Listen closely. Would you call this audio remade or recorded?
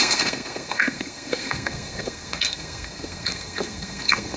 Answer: remade